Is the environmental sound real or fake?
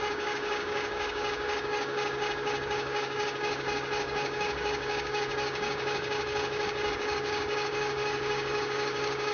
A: fake